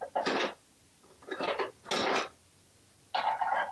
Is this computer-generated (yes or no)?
no